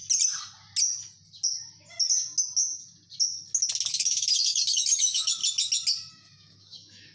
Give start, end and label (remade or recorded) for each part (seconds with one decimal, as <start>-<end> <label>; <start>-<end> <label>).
0.0-3.9 recorded; 3.9-5.4 remade; 5.4-6.1 recorded; 6.1-7.1 remade